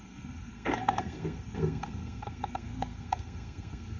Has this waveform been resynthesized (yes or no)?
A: yes